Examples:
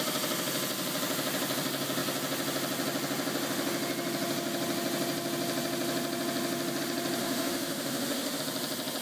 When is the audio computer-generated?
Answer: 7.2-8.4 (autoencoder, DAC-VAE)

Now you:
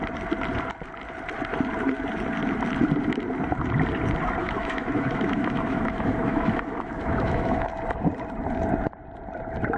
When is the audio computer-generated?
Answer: 4.4-7.7 (autoencoder, DAC-VAE)

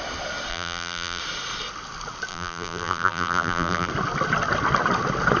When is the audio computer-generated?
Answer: 0.5-1.2 (vocoder, BigVGAN v2); 2.3-3.9